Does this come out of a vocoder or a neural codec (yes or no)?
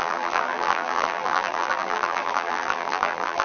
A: yes